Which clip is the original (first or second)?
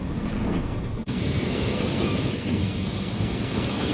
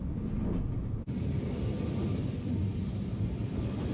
second